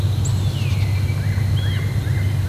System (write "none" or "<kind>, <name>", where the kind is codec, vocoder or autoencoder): none